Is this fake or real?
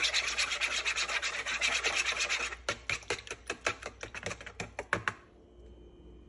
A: real